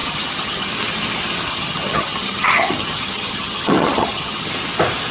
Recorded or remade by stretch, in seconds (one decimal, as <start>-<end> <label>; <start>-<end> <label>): 0.0-0.7 remade; 0.7-1.5 recorded; 1.5-4.5 remade; 4.5-5.1 recorded